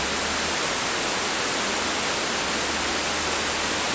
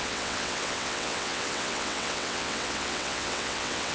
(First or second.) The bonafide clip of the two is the first